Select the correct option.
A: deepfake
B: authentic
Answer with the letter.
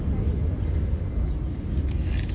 B